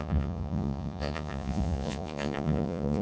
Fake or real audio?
fake